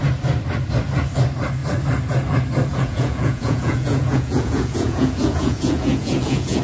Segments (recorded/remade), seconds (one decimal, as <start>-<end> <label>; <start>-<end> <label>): 0.0-2.7 recorded; 2.7-6.6 remade